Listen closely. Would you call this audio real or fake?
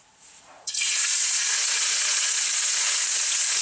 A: fake